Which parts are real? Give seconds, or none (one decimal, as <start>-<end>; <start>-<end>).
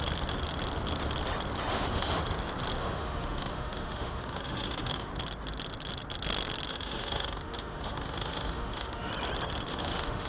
0.0-1.7; 2.2-2.8; 5.1-6.7; 9.1-9.7